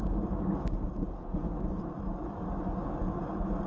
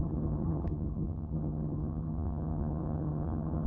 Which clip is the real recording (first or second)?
first